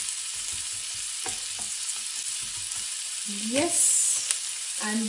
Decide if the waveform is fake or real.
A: real